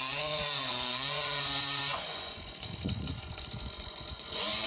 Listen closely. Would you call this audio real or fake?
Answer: fake